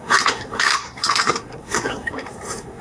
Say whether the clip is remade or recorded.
remade